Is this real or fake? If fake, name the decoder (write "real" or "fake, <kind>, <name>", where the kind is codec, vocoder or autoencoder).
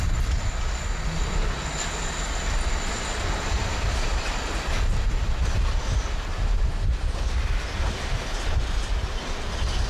real